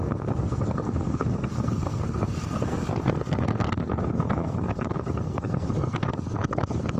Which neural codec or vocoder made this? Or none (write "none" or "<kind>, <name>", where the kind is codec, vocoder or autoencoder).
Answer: codec, SNAC